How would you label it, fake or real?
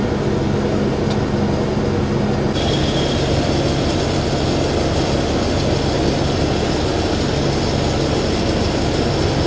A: real